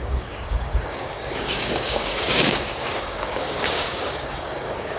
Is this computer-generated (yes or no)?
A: yes